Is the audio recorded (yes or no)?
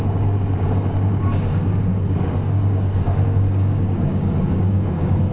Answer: no